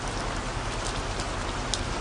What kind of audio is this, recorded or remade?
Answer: recorded